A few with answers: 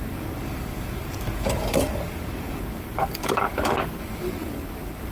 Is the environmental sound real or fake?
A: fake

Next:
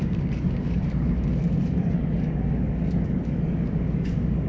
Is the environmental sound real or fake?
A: fake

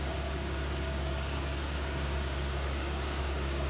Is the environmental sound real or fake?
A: fake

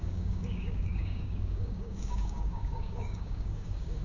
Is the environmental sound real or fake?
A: fake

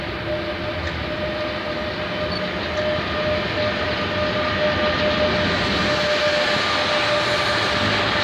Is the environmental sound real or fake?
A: real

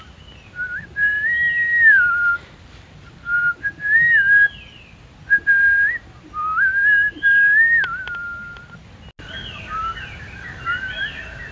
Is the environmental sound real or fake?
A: real